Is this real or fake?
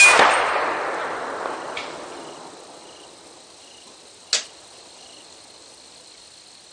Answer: real